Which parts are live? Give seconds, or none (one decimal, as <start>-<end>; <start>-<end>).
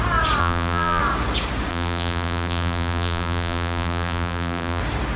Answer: 0.0-0.4; 1.0-1.7; 4.8-5.2